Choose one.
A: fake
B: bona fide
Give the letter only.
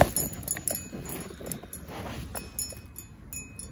B